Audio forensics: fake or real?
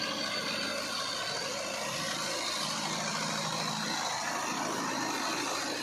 real